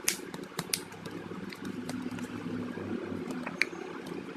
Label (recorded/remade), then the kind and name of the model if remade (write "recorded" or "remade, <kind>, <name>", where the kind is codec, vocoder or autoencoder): recorded